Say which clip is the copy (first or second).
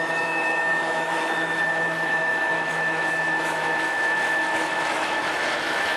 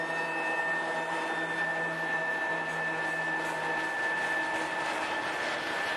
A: first